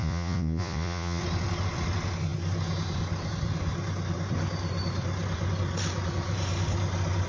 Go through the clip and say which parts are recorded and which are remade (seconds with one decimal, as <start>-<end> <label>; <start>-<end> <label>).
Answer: 0.0-1.2 remade; 1.2-7.3 recorded